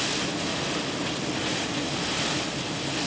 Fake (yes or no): no